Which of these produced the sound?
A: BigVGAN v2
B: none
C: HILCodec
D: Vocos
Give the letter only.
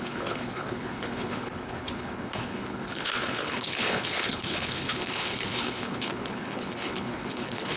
C